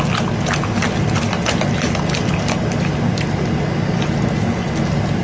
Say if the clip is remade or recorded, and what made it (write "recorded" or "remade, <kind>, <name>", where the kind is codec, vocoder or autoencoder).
recorded